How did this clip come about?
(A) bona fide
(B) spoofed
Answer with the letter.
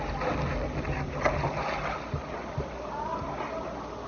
A